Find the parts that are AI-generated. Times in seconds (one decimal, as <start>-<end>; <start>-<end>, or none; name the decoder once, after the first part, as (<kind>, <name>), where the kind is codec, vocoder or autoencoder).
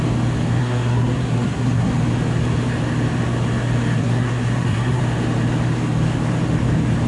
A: 0.6-1.9 (codec, SNAC); 4.0-5.0